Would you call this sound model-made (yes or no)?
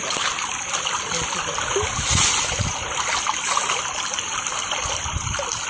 no